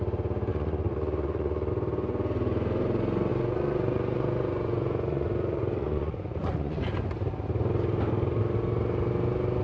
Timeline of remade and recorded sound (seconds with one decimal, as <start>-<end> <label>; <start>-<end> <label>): 0.0-0.5 recorded; 0.5-1.7 remade; 1.7-3.3 recorded; 3.3-6.8 remade; 6.8-9.6 recorded